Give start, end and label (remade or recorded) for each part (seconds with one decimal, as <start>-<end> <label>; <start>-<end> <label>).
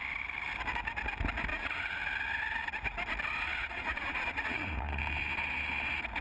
0.0-1.5 recorded; 1.5-2.0 remade; 2.0-3.6 recorded; 3.6-5.0 remade; 5.0-6.2 recorded